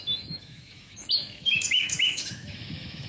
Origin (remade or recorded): remade